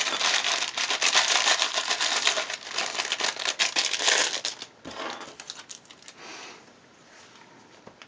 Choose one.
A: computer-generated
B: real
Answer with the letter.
B